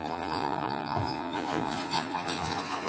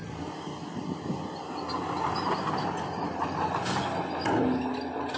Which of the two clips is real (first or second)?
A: second